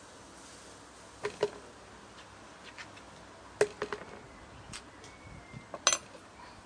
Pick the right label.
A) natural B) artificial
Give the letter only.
A